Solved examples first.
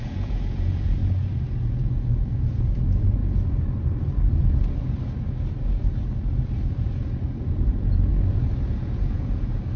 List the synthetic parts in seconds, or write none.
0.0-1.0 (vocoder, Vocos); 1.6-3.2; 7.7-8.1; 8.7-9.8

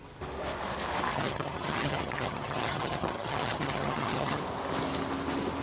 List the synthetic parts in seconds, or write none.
1.1-4.4 (vocoder, HiFi-GAN)

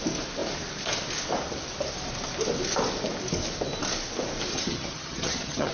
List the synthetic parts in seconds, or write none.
4.5-5.7 (vocoder, HiFi-GAN)

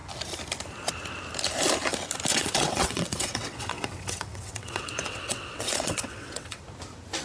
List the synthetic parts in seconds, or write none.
2.3-6.6 (vocoder, WaveNeXt)

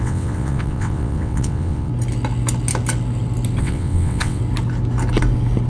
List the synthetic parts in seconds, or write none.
0.0-1.9 (vocoder, WaveNeXt); 3.6-4.4